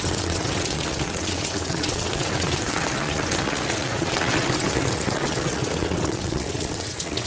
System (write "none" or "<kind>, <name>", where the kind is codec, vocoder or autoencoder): vocoder, WaveNeXt